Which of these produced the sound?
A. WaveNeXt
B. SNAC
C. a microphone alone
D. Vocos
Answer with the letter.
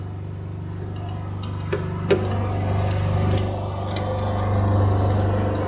C